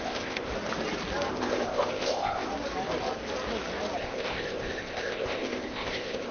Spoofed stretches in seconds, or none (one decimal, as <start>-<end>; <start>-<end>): 0.0-0.5; 1.3-2.5; 4.0-6.3